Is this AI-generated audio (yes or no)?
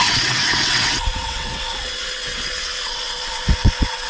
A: yes